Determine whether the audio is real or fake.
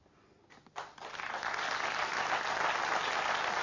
real